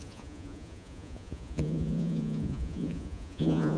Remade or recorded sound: remade